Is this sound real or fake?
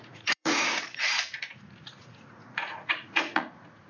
fake